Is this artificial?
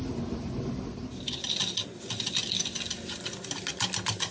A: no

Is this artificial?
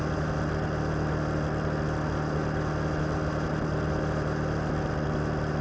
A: no